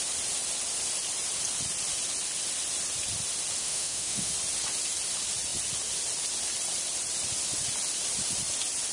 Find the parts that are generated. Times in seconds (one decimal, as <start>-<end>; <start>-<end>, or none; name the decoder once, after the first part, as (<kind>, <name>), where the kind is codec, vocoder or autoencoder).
3.6-4.3 (autoencoder, DAC-VAE)